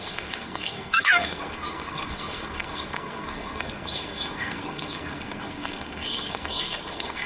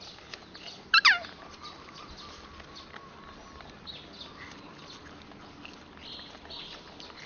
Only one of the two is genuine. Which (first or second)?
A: second